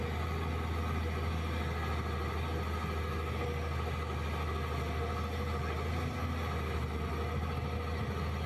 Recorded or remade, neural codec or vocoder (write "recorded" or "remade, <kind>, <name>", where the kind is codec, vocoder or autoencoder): recorded